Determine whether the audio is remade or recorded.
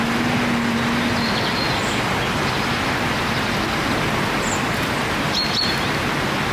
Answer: recorded